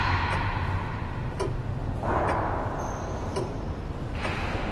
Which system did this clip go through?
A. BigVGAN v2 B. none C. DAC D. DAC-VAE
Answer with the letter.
A